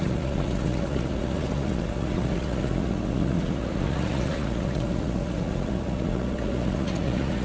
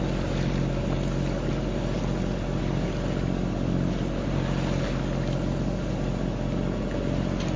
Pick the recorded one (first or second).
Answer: second